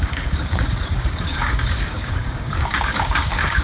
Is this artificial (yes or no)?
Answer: yes